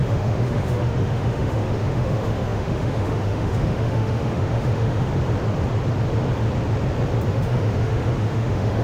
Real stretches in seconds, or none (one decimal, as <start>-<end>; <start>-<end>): 5.1-7.3